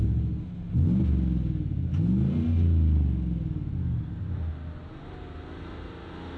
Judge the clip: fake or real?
real